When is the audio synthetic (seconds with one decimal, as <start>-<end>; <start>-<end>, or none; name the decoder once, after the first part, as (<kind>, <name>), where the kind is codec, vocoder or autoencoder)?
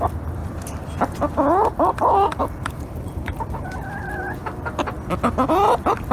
2.4-3.2 (vocoder, BigVGAN v2)